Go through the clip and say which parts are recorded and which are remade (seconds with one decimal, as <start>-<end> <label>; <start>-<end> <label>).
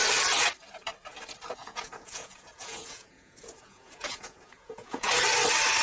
0.0-1.6 recorded; 1.6-5.1 remade; 5.1-5.8 recorded